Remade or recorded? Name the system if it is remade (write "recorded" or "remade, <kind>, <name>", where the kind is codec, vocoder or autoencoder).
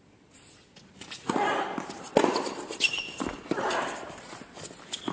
recorded